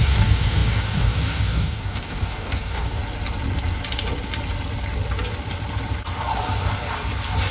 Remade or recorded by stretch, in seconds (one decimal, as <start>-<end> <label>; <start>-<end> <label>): 0.0-3.0 remade; 3.0-7.5 recorded